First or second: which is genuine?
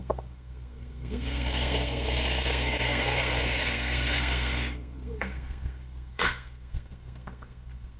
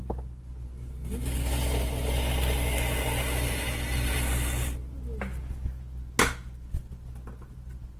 second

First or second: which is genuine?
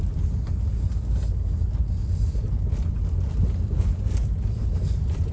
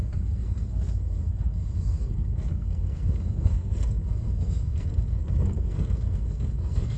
first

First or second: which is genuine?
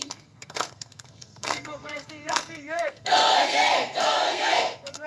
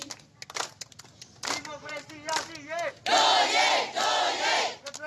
second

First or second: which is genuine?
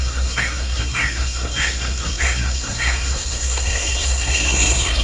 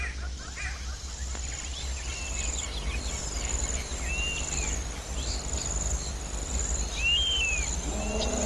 second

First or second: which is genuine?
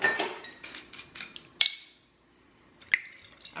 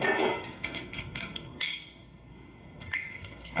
first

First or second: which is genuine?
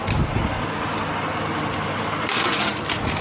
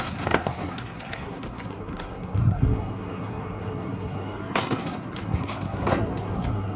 first